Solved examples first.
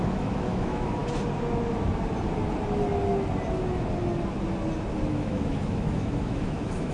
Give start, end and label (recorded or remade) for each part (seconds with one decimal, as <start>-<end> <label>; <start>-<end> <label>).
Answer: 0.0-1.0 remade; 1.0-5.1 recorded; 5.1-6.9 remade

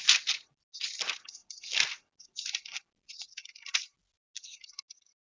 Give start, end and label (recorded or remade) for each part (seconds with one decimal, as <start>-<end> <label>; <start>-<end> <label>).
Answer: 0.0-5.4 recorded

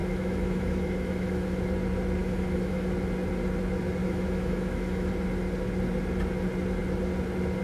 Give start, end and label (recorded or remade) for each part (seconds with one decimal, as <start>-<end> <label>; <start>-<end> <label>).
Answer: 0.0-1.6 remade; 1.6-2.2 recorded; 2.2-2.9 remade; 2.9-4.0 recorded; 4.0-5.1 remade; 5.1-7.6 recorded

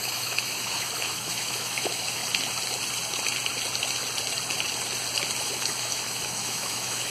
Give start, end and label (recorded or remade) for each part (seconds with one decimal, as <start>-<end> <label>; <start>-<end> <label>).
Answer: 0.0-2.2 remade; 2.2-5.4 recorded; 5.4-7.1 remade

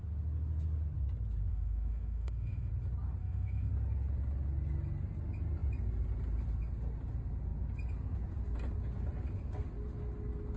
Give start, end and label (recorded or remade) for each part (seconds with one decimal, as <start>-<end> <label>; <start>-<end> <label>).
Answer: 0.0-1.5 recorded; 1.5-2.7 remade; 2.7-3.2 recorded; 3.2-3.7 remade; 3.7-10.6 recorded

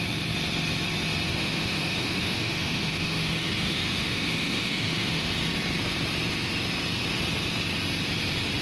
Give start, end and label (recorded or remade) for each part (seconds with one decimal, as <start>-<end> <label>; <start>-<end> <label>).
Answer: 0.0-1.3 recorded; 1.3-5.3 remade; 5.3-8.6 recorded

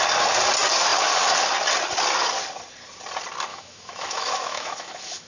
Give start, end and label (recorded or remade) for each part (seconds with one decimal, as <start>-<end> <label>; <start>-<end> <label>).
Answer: 0.0-3.5 recorded; 3.5-5.3 remade